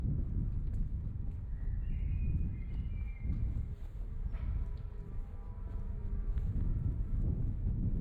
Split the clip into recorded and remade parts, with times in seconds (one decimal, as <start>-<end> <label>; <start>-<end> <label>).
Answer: 0.0-3.4 recorded; 3.4-4.1 remade; 4.1-8.0 recorded